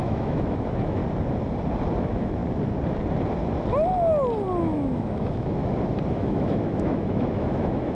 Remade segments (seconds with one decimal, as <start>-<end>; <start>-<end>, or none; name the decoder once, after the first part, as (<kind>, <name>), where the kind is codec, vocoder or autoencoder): 0.0-1.0 (autoencoder, DAC-VAE); 2.0-2.4; 4.6-5.6; 6.1-7.9